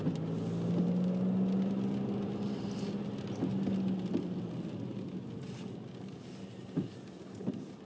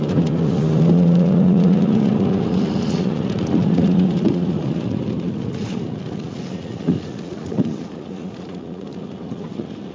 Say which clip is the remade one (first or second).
second